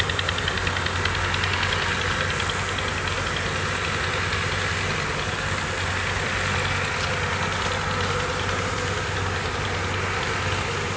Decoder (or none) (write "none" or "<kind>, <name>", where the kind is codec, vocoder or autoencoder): none